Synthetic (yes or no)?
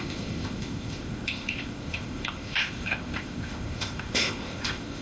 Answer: yes